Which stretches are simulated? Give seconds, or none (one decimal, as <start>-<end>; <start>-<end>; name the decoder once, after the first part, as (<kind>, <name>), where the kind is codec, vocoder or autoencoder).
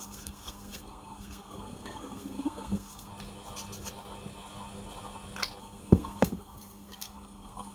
0.0-3.1 (codec, SNAC); 5.6-7.7